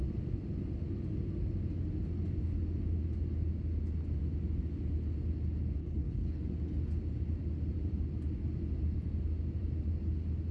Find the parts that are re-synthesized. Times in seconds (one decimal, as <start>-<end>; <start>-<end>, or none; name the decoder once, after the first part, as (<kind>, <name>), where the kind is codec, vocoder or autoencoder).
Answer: 5.8-6.4 (codec, HILCodec)

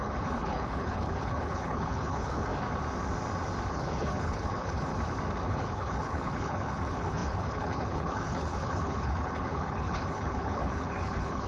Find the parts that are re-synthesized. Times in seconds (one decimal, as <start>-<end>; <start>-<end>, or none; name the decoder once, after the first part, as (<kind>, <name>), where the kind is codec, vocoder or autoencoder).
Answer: 0.0-2.5 (codec, HILCodec); 3.7-4.9; 5.5-11.5